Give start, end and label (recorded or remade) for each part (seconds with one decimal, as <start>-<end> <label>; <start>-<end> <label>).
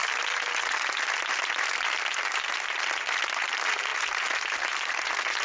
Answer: 0.0-5.4 recorded